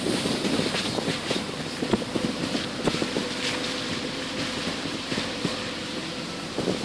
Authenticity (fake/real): fake